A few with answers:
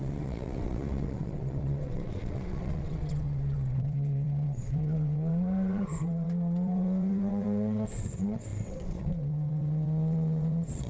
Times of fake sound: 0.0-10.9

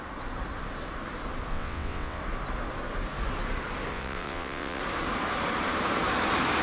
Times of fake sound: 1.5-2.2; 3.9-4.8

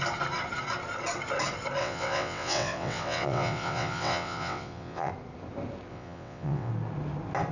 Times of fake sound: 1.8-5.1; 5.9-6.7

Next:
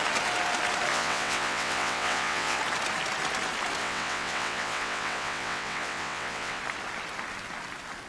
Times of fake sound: 0.9-2.6; 3.8-6.6

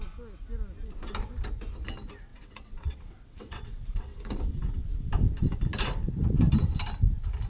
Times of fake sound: 2.3-4.9